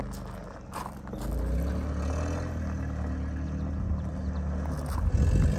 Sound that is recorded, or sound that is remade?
recorded